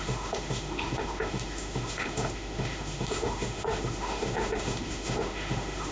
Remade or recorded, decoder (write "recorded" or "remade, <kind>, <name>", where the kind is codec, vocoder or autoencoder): remade, autoencoder, DAC-VAE